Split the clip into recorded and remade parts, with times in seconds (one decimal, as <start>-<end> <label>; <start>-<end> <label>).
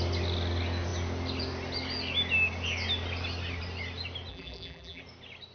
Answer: 0.0-4.3 recorded; 4.3-5.0 remade; 5.0-5.5 recorded